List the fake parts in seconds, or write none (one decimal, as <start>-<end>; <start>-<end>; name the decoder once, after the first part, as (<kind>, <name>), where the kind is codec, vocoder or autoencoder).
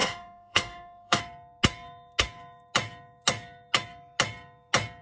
0.0-1.2 (autoencoder, DAC-VAE)